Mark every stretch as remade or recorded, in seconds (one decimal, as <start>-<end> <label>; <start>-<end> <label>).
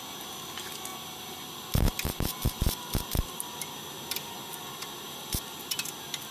0.0-6.3 recorded